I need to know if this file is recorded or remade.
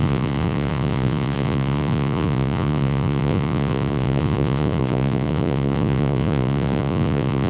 remade